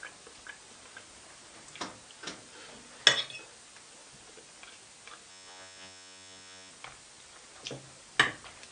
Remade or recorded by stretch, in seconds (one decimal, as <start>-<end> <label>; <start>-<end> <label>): 0.0-5.3 recorded; 5.3-6.7 remade; 6.7-8.7 recorded